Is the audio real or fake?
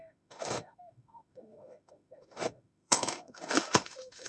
fake